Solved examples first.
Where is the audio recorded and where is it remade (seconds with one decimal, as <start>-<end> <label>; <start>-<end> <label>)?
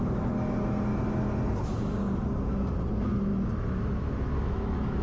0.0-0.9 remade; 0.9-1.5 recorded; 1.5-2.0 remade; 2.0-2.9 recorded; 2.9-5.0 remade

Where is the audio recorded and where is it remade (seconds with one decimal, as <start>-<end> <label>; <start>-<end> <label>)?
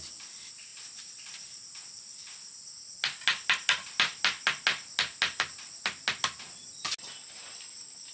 0.0-8.1 recorded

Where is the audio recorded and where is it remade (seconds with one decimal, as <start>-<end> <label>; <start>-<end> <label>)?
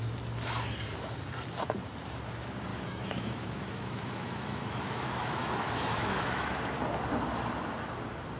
0.0-2.7 recorded; 2.7-6.6 remade; 6.6-8.4 recorded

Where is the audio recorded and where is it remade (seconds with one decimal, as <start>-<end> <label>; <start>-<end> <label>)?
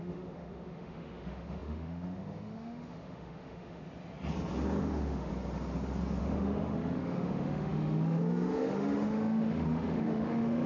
0.0-3.8 remade; 3.8-4.8 recorded; 4.8-5.3 remade; 5.3-6.2 recorded; 6.2-10.7 remade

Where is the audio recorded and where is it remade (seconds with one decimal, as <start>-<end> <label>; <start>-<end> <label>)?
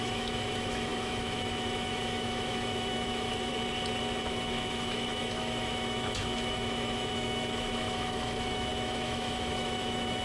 0.0-3.5 remade; 3.5-4.2 recorded; 4.2-10.2 remade